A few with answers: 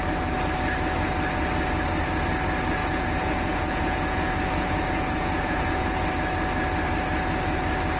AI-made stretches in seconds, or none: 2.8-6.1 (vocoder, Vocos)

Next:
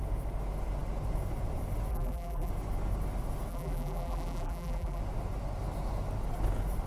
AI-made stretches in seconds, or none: 1.9-2.5 (vocoder, BigVGAN v2); 3.5-5.0

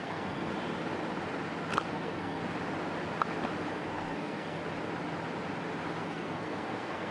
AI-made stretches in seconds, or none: 0.0-0.5 (codec, SNAC); 1.9-2.4; 3.7-4.6; 6.0-7.1

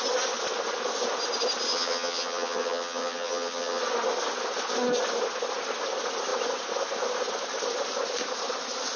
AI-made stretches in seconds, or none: 1.7-3.8 (vocoder, HiFi-GAN)